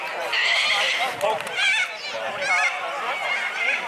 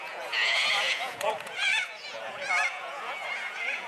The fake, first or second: second